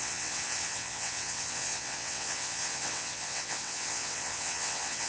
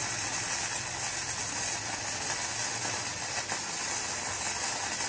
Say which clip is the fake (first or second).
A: first